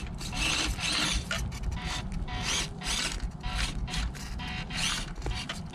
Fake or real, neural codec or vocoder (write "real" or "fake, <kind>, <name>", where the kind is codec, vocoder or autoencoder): real